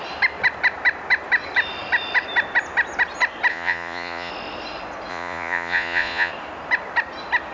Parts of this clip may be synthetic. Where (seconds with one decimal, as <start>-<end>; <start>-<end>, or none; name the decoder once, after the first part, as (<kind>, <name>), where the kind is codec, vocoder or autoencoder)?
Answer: 3.5-4.3 (vocoder, Vocos); 5.1-6.3